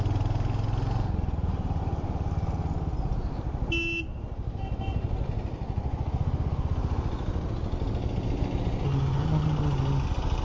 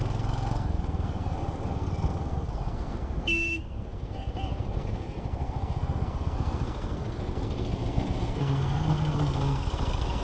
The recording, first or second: first